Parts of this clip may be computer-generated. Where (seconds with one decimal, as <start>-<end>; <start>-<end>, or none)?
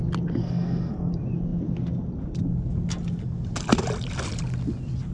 0.4-1.1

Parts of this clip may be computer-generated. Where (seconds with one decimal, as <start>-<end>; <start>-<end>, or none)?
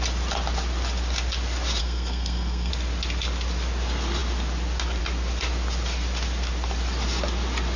1.8-2.7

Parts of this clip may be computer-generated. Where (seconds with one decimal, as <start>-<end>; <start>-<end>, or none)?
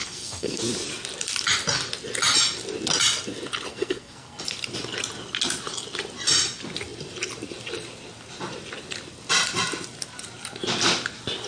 0.0-0.6; 3.7-4.4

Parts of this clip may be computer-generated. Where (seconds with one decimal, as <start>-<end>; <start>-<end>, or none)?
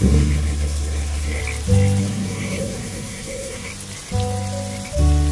0.0-1.4; 2.0-3.7